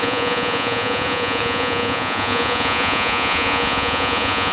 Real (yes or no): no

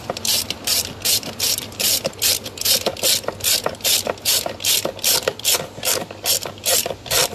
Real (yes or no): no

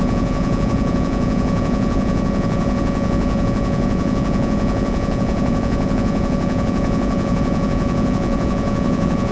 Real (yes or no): no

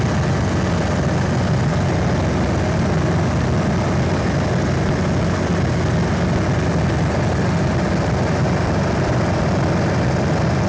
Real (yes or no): yes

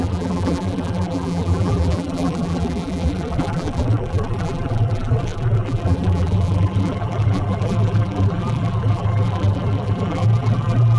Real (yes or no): no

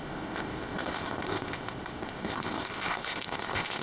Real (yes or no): no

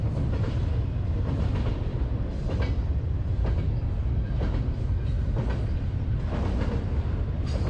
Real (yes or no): no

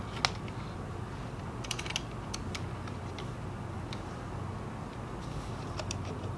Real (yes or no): yes